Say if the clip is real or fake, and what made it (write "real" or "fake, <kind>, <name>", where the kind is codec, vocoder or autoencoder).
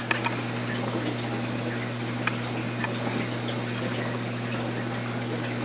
real